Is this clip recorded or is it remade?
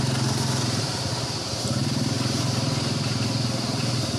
remade